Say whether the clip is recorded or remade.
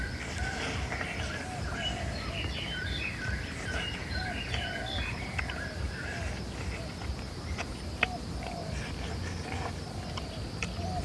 remade